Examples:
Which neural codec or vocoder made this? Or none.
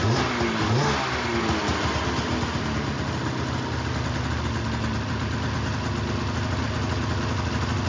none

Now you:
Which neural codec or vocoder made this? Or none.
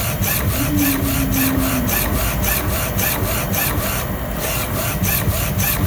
none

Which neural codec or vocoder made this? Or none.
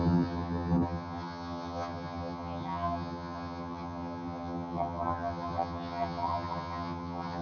vocoder, HiFi-GAN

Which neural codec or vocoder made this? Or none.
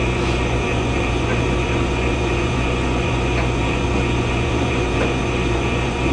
vocoder, Vocos